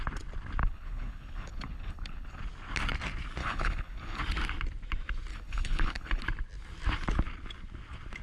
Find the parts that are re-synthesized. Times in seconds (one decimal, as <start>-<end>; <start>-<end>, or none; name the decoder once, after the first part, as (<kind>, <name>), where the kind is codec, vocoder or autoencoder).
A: 0.6-2.4 (codec, HILCodec); 3.4-4.2; 5.3-6.2